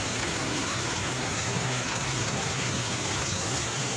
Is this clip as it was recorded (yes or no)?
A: no